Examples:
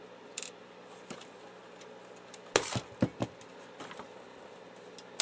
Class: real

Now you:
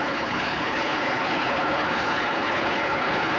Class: fake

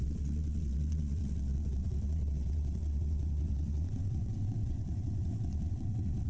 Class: fake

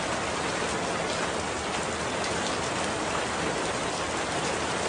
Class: real